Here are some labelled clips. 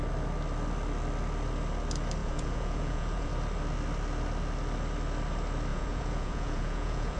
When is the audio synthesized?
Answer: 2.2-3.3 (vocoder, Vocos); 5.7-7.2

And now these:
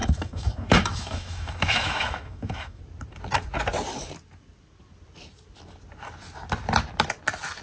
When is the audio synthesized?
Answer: 0.0-2.8 (autoencoder, DAC-VAE)